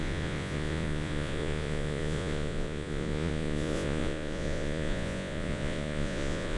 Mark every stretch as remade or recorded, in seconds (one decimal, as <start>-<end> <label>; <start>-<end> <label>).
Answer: 0.0-6.6 remade